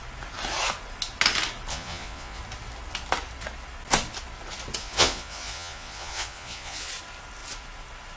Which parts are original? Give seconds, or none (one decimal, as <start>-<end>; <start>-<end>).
0.0-1.7; 2.4-4.8; 6.9-8.2